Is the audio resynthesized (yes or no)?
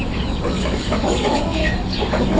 yes